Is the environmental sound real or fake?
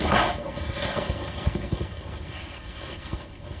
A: fake